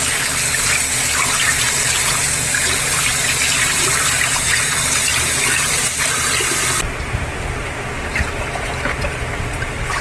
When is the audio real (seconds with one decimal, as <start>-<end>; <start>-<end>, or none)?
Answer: 0.0-10.0